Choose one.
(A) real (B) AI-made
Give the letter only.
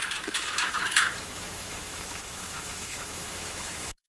B